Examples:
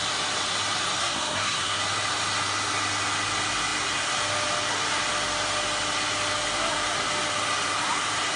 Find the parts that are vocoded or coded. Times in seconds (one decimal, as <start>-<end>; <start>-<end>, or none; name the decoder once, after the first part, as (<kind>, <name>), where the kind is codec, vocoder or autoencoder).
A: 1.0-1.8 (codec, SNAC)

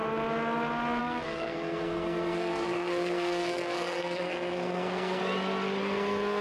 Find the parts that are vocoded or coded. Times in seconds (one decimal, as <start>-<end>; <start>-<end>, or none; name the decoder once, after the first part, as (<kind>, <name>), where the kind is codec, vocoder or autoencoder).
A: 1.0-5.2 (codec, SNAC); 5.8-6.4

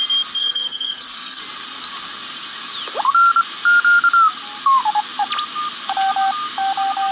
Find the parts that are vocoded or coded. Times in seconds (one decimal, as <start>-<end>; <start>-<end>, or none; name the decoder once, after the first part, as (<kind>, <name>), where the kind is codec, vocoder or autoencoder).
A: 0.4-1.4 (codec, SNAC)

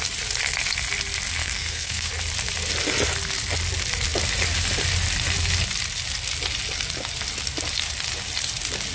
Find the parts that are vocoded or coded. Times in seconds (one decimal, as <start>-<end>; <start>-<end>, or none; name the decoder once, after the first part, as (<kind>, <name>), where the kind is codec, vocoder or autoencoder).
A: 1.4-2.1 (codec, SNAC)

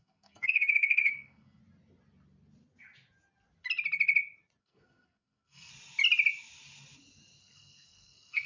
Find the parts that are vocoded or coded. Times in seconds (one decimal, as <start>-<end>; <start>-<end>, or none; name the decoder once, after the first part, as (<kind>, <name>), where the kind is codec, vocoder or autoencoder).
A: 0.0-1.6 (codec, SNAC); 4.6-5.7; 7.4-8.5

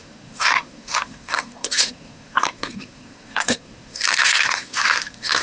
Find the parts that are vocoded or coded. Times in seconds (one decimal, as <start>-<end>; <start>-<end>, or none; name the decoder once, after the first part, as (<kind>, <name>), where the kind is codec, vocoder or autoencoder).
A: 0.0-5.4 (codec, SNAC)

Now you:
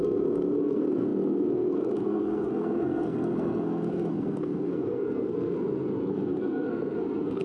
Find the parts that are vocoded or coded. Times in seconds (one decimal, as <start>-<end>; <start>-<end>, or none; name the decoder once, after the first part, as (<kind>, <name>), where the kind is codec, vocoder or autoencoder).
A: 0.0-7.4 (codec, SNAC)